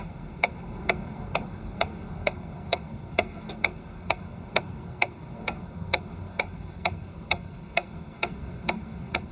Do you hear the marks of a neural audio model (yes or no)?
yes